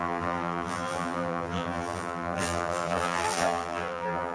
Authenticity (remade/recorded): remade